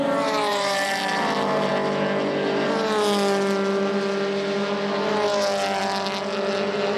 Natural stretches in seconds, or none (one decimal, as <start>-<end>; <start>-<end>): 0.0-0.5; 1.7-7.0